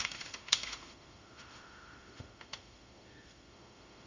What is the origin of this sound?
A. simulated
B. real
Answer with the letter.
A